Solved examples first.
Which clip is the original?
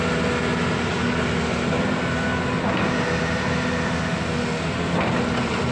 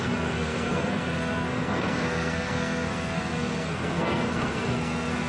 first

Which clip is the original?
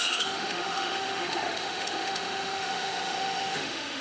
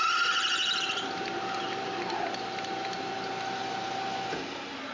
second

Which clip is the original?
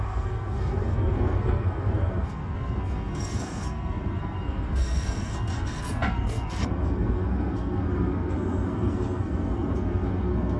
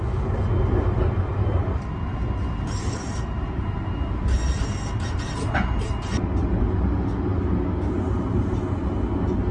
second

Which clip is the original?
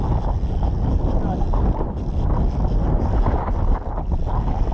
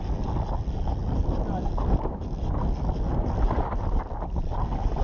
first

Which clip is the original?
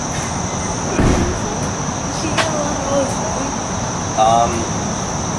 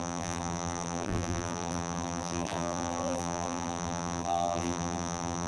first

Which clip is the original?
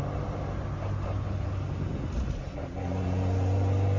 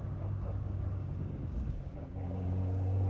first